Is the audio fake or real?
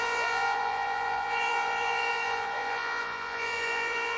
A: fake